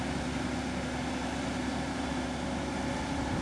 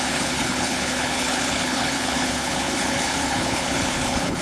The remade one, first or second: second